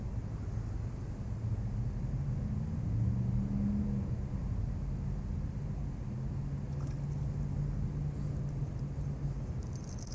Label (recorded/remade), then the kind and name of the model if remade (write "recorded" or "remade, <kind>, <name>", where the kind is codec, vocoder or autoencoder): recorded